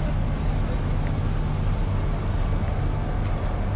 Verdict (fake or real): real